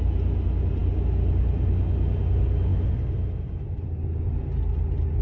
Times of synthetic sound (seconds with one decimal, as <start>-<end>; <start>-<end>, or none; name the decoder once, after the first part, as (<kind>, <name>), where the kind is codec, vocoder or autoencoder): none